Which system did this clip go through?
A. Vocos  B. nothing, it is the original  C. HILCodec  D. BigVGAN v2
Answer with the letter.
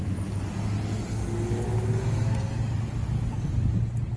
B